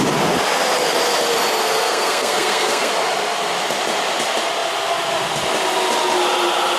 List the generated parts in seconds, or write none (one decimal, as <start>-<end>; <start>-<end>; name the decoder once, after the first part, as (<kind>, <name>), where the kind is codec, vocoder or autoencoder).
1.6-2.9 (codec, SNAC)

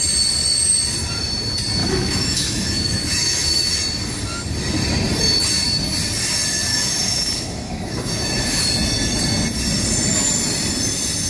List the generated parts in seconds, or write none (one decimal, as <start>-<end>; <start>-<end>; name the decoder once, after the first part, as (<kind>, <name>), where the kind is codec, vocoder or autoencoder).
1.8-3.7 (autoencoder, DAC-VAE); 6.7-8.6

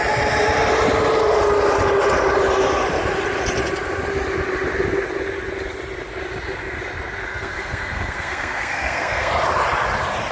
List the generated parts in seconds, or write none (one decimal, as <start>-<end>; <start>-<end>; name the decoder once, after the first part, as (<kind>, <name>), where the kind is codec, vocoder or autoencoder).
7.3-9.3 (codec, SNAC)

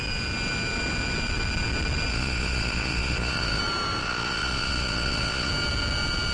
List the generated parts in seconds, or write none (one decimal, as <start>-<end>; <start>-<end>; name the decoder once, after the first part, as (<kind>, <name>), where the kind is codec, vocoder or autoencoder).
2.1-3.6 (vocoder, Vocos); 4.0-5.5

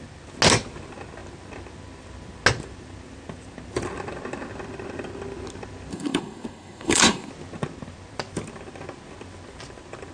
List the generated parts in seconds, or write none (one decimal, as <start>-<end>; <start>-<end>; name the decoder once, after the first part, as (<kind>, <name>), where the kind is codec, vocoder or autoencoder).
5.9-7.3 (codec, SNAC)